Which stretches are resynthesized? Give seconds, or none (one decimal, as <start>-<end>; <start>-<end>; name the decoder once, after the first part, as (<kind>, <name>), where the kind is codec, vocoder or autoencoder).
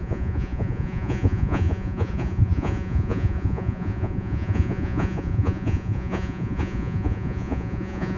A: 0.0-8.2 (vocoder, Vocos)